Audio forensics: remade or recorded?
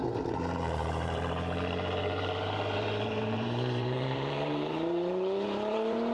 remade